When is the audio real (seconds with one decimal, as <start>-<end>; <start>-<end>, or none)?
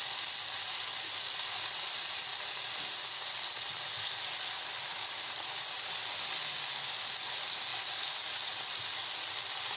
0.0-9.8